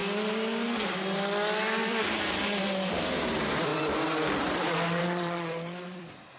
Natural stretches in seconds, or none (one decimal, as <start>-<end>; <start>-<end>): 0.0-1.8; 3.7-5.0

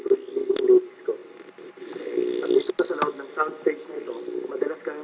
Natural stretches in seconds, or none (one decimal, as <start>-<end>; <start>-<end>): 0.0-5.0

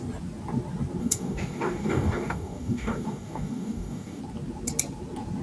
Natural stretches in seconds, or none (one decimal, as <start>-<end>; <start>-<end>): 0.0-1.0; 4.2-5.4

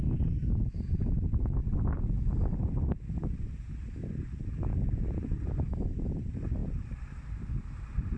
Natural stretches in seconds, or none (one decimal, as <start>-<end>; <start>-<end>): 0.0-8.2

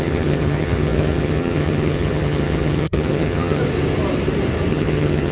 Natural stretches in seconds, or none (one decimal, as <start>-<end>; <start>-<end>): 3.6-4.7